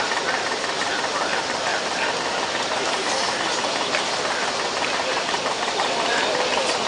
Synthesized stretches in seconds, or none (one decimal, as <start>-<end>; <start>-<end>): none